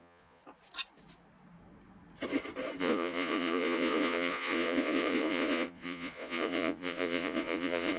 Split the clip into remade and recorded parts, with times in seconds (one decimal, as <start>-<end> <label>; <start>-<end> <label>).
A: 0.0-0.4 remade; 0.4-2.8 recorded; 2.8-8.0 remade